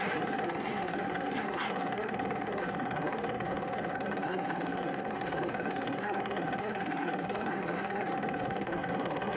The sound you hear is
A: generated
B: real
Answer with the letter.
A